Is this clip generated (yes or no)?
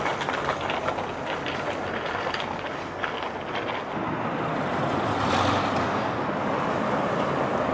no